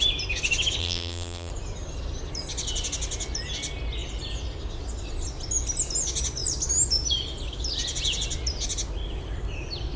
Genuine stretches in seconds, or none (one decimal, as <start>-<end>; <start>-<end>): 0.0-0.8; 1.5-10.0